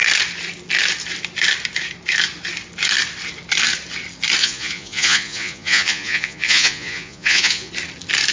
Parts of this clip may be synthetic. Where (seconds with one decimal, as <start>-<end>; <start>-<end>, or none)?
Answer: 4.4-7.7